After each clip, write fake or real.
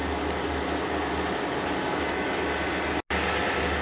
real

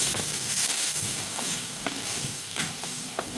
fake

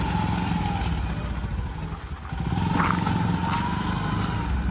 real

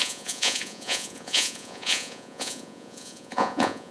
fake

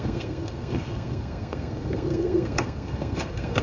fake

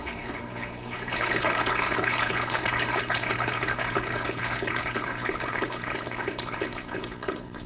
fake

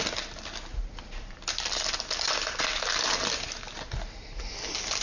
real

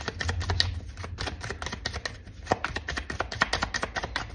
real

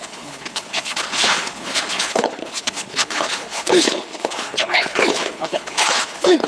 fake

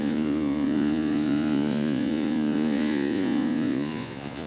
fake